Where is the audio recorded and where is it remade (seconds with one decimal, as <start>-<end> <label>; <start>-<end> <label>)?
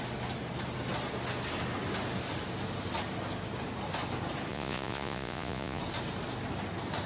0.0-4.5 recorded; 4.5-5.8 remade; 5.8-7.1 recorded